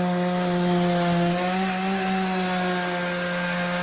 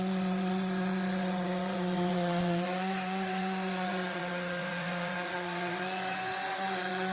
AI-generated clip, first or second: second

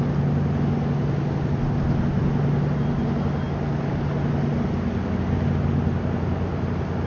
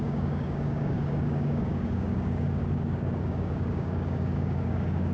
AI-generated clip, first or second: second